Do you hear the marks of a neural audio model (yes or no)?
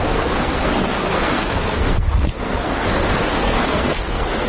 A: yes